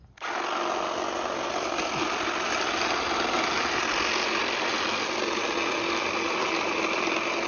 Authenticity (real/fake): real